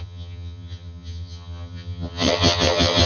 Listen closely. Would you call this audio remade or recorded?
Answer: remade